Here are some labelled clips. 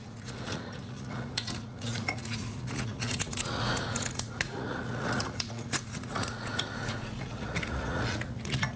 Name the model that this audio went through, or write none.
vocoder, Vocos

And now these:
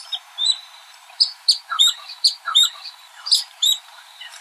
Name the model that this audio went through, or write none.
vocoder, BigVGAN v2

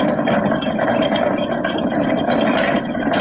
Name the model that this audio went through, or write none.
none